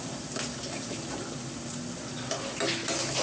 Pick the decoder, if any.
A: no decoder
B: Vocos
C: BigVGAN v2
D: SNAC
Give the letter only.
A